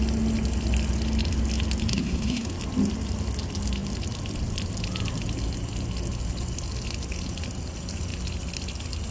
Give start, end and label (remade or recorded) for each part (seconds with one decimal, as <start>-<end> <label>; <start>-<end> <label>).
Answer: 0.0-1.9 recorded; 1.9-2.5 remade; 2.5-9.1 recorded